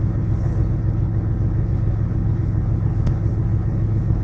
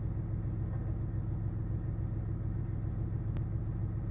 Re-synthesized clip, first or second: first